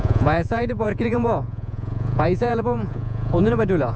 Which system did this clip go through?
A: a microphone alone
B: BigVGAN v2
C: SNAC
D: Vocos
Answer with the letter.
D